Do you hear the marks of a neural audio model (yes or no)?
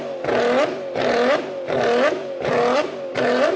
no